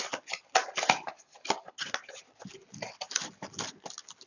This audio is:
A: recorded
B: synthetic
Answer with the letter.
A